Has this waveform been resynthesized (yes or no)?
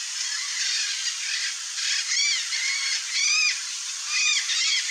no